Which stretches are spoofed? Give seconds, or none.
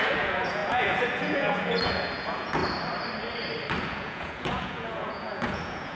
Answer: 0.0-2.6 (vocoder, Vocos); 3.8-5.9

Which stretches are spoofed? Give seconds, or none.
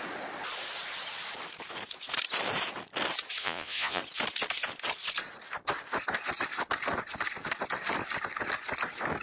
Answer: 3.4-4.0 (vocoder, Vocos)